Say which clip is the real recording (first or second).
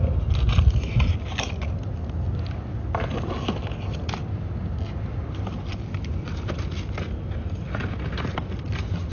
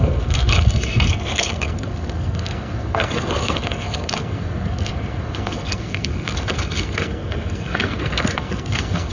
first